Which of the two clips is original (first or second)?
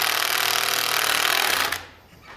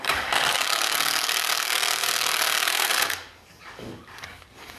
first